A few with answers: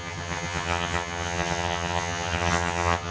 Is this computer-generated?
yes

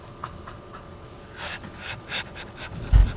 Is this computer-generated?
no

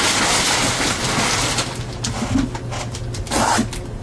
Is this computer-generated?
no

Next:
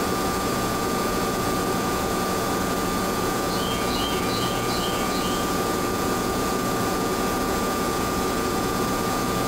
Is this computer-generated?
yes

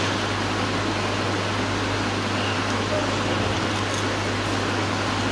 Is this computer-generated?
no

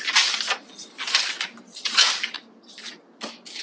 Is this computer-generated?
no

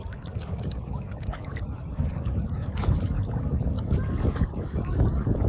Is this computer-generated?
yes